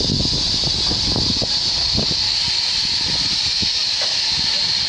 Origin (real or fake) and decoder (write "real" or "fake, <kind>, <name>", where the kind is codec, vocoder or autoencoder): real